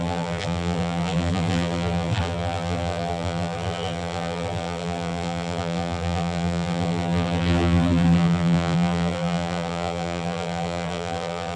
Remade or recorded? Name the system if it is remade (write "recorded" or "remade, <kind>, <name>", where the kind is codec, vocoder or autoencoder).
remade, vocoder, BigVGAN v2